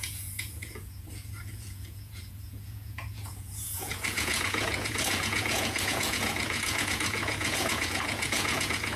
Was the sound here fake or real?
fake